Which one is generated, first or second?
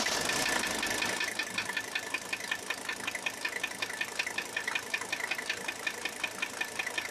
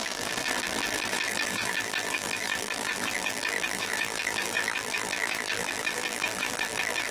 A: second